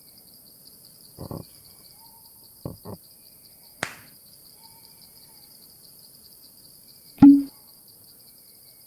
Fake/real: fake